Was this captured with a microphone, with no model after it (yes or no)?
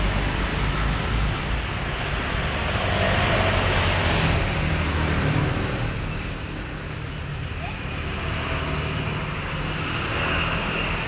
yes